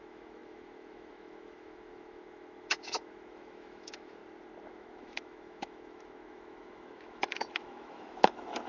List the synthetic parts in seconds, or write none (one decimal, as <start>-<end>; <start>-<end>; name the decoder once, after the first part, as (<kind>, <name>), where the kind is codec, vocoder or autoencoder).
0.0-4.2 (autoencoder, DAC-VAE); 4.7-8.7